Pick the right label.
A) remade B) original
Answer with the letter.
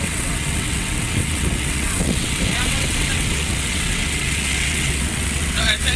A